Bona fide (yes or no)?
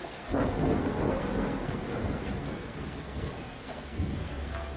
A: no